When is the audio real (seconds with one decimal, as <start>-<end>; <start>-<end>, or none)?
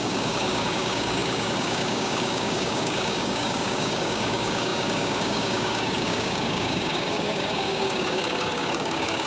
none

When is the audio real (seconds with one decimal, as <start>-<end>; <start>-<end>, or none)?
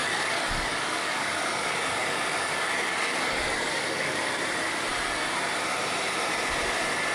4.3-7.1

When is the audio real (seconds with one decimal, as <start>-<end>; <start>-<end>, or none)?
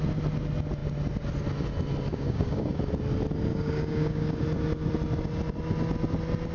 0.0-2.1; 2.8-3.5; 4.4-6.5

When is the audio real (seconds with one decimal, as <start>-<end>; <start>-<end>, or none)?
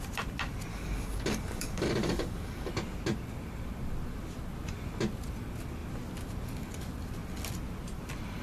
0.0-0.7; 2.7-8.4